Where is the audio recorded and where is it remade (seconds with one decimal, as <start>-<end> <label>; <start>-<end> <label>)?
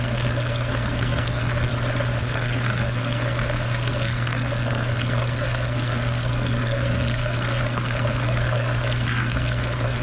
0.0-1.7 remade; 1.7-2.2 recorded; 2.2-10.0 remade